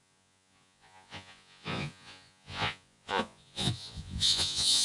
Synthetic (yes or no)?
yes